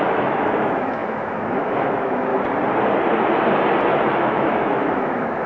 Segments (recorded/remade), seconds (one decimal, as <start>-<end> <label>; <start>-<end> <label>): 0.0-2.3 remade; 2.3-3.9 recorded; 3.9-5.5 remade